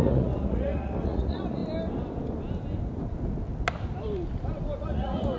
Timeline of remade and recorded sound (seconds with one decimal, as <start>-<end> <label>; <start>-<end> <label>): 0.0-1.6 remade; 1.6-4.8 recorded; 4.8-5.4 remade